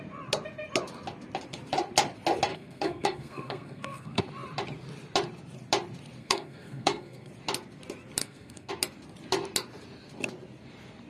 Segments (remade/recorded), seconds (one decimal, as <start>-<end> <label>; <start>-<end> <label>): 0.0-2.5 recorded; 2.5-4.2 remade; 4.2-6.2 recorded; 6.2-7.3 remade; 7.3-8.2 recorded; 8.2-8.7 remade; 8.7-11.1 recorded